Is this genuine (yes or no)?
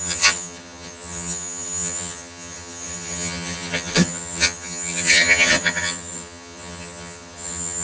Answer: no